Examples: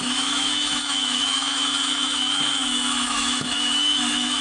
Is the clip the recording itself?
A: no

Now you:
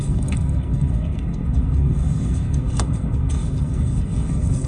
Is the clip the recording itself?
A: no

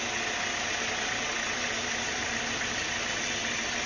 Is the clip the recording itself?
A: yes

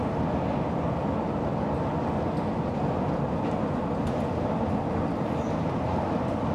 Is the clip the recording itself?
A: yes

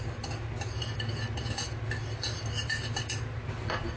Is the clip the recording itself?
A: yes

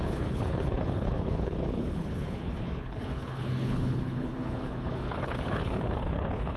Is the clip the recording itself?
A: no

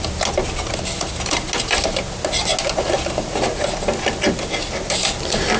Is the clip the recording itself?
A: yes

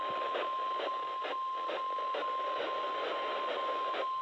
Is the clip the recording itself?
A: yes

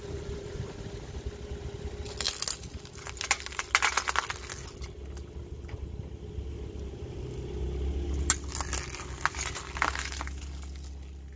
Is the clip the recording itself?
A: yes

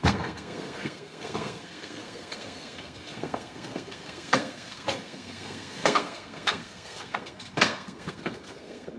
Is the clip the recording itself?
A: no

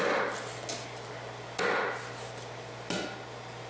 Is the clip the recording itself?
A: yes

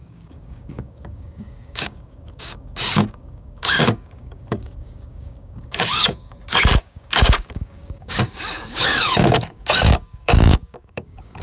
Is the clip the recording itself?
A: no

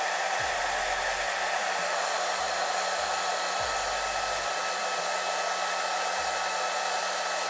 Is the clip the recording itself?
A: yes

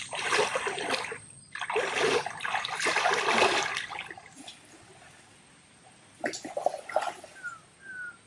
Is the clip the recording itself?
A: yes